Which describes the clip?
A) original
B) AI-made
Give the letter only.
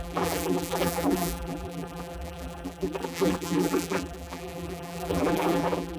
B